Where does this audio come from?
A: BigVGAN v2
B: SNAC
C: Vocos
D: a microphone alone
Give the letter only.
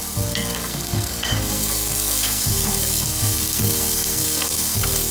B